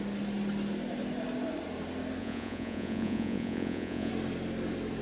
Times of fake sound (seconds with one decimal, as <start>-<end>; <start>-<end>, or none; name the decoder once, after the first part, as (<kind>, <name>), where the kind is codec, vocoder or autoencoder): 2.2-4.1 (vocoder, Vocos)